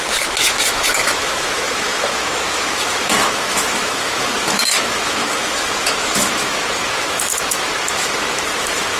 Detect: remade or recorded remade